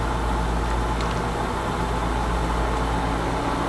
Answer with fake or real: real